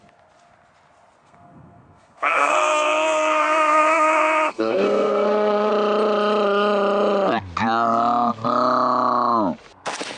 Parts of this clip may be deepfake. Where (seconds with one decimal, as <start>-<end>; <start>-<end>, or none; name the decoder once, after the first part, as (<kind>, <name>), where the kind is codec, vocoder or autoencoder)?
1.2-5.7 (codec, SNAC)